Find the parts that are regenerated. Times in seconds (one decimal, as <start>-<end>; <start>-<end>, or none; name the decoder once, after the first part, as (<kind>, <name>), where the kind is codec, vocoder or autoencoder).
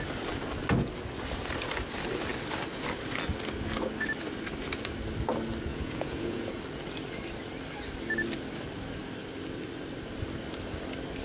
5.7-6.6 (vocoder, Vocos)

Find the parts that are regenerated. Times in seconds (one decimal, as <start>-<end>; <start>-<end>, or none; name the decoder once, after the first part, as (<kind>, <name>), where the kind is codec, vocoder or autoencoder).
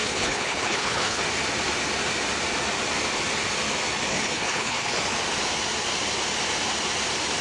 0.0-1.2 (codec, HILCodec); 4.1-5.0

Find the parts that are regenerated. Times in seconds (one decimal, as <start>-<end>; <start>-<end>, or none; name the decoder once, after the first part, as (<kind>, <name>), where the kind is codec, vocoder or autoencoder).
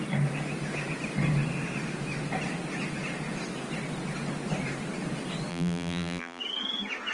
5.5-6.4 (vocoder, BigVGAN v2)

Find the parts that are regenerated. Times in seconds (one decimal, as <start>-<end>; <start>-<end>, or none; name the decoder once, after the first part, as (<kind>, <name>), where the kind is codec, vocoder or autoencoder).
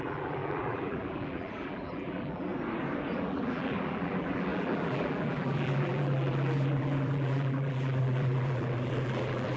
0.0-2.5 (vocoder, BigVGAN v2); 3.1-9.6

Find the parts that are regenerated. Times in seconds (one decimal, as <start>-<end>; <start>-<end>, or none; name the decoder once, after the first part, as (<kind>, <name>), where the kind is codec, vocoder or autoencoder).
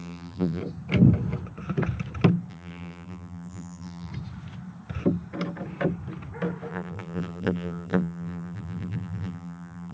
0.0-0.6 (vocoder, BigVGAN v2); 2.5-4.1; 6.7-9.9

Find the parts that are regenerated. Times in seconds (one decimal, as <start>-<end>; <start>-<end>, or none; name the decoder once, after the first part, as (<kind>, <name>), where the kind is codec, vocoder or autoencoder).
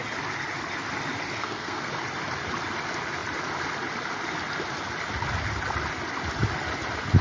1.4-1.9 (codec, SNAC)